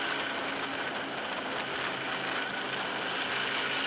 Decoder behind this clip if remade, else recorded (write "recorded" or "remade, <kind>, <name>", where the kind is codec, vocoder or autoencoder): recorded